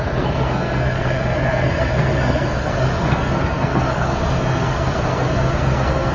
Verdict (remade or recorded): remade